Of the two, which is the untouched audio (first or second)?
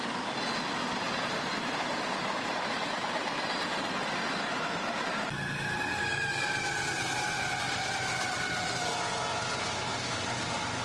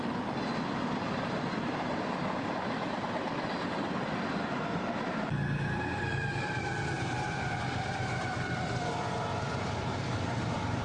first